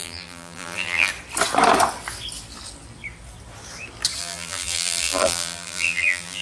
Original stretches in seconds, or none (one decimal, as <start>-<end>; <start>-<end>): 1.1-4.2

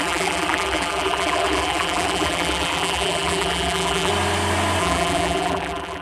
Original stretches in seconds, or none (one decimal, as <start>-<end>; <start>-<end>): 4.1-4.8

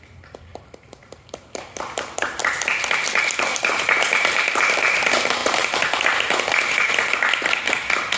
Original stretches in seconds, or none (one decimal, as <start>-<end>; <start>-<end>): 0.0-0.5; 2.4-3.5; 4.7-5.4; 6.9-8.2

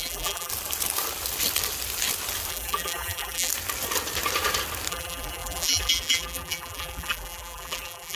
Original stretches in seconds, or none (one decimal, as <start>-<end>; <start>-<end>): 0.5-2.5; 3.5-4.9

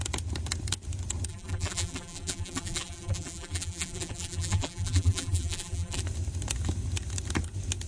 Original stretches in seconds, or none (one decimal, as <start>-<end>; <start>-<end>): 0.0-1.3; 6.0-7.9

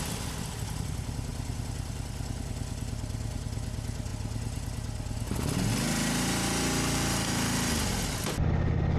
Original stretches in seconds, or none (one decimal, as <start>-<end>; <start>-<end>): 0.0-9.0

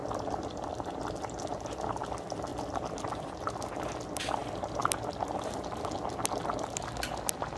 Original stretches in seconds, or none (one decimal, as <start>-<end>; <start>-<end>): 1.2-2.5; 3.7-7.6